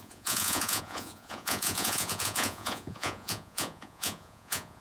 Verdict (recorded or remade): remade